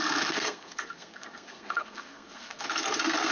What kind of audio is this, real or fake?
fake